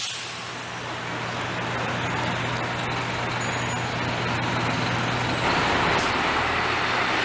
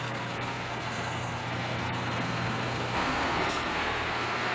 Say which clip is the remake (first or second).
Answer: second